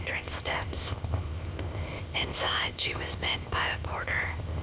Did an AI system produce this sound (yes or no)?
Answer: yes